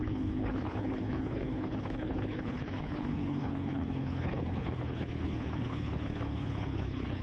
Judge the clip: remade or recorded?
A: remade